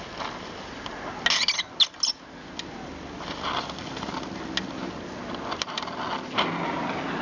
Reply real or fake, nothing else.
real